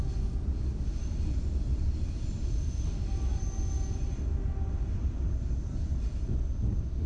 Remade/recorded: recorded